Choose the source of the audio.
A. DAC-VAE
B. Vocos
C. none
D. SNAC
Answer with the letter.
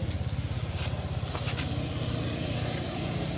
C